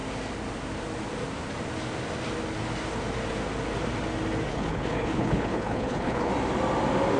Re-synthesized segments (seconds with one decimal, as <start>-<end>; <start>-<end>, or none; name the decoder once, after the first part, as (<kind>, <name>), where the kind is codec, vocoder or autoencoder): 4.5-6.3 (codec, HILCodec)